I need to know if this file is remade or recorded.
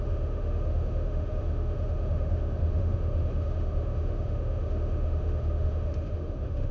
remade